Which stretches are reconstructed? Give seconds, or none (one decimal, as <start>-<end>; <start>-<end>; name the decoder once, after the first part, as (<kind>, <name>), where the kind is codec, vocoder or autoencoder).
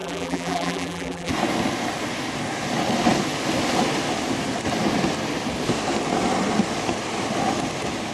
0.0-1.3 (vocoder, BigVGAN v2)